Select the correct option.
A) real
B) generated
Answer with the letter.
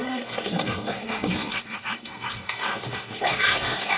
B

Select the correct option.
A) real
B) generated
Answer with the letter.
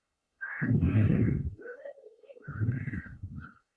B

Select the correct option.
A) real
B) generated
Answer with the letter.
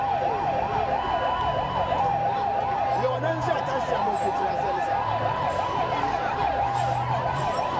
A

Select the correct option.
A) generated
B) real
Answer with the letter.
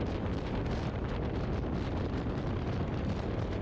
B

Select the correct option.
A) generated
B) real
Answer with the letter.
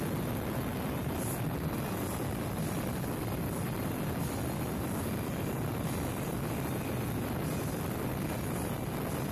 B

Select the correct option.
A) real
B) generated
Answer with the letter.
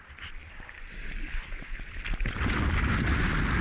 A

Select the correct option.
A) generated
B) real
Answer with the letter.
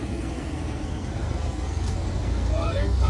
A